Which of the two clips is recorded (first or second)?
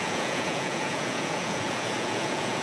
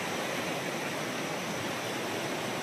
second